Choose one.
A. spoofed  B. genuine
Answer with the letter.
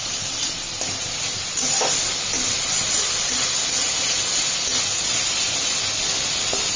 B